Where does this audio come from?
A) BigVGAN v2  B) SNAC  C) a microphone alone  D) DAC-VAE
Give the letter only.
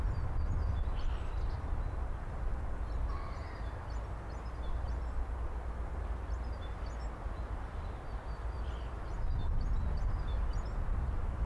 C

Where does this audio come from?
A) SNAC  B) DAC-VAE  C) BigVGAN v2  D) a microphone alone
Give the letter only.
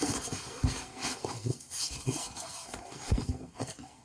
A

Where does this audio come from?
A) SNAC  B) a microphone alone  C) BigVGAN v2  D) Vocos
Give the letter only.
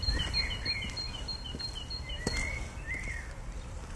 B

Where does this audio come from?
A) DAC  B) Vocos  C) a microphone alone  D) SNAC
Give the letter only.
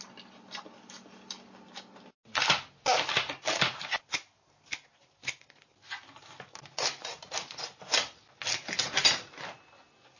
C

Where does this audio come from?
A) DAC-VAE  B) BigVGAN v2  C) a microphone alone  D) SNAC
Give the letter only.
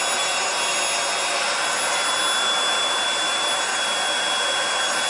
C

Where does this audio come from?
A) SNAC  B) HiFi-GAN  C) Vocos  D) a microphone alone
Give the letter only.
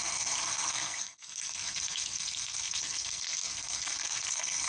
A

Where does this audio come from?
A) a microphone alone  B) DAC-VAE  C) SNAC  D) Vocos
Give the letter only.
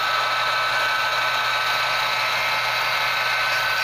A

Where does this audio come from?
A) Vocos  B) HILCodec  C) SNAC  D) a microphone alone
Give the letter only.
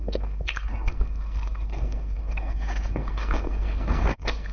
C